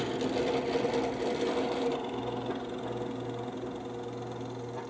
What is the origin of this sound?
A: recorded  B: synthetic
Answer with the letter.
A